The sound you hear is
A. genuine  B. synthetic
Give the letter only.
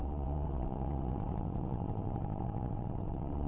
B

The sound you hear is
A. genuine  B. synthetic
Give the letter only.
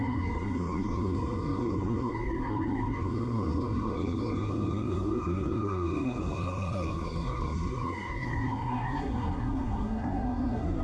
B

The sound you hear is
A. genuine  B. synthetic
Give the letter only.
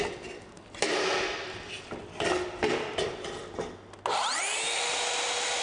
A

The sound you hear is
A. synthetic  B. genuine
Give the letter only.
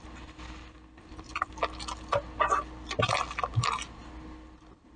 B